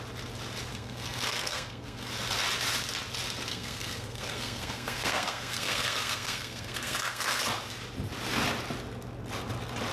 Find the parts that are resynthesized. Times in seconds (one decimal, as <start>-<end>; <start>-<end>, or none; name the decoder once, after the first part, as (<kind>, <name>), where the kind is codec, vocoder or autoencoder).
0.7-2.1 (codec, SNAC); 3.5-7.4